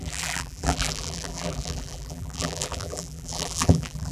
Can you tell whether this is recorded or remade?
remade